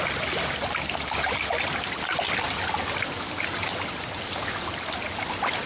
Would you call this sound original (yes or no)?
yes